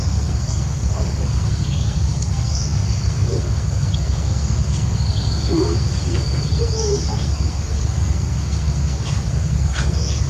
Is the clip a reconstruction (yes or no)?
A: yes